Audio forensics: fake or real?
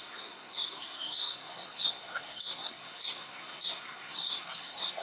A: fake